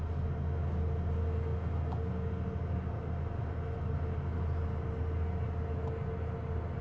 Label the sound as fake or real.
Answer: real